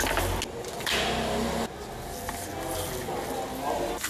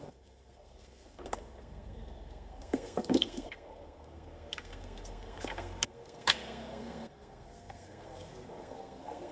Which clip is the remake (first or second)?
second